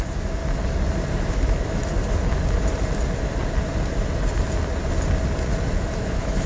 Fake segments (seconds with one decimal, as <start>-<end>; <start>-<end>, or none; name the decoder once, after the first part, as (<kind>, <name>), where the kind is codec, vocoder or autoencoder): 0.0-0.4 (autoencoder, DAC-VAE); 1.3-1.9; 5.8-6.5